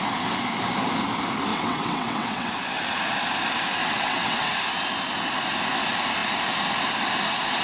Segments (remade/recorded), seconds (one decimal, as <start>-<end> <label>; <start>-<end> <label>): 0.0-1.5 recorded; 1.5-2.5 remade; 2.5-3.8 recorded; 3.8-4.5 remade; 4.5-7.6 recorded